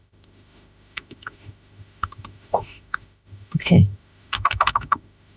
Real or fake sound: fake